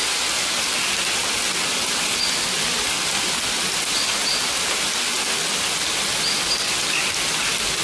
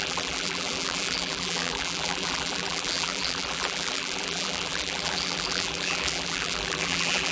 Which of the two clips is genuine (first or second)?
first